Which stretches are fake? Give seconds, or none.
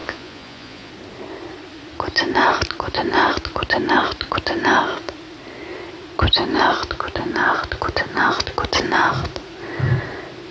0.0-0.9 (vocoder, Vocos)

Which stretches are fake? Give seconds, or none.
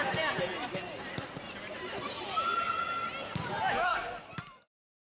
0.0-0.5 (vocoder, Vocos); 3.5-3.9; 4.6-5.0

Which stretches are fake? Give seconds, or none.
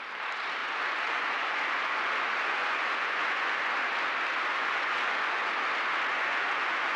0.6-3.7 (vocoder, Vocos); 4.5-5.5; 6.1-7.0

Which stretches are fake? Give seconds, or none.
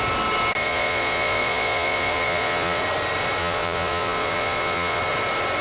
0.6-2.8 (vocoder, Vocos); 3.4-5.0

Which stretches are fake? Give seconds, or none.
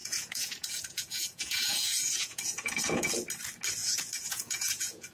0.0-3.1 (vocoder, Vocos); 3.8-5.1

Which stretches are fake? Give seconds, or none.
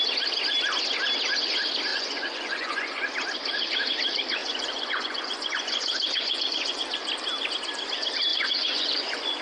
1.9-3.1 (vocoder, Vocos); 4.4-6.8; 8.3-9.4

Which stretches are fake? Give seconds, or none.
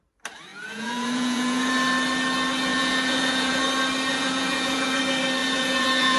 0.5-1.7 (vocoder, Vocos); 2.7-3.6; 4.1-5.0; 5.4-6.2